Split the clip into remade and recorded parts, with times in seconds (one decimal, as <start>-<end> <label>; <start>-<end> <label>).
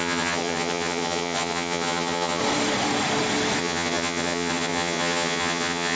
0.0-2.4 remade; 2.4-3.6 recorded; 3.6-6.0 remade